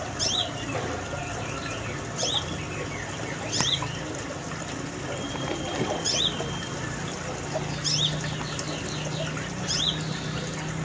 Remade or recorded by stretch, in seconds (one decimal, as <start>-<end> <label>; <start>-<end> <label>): 0.0-10.8 recorded